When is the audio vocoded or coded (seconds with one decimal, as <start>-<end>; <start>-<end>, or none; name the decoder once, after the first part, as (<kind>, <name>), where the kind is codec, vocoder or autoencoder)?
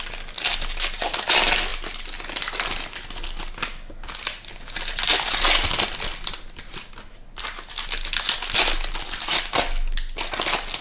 none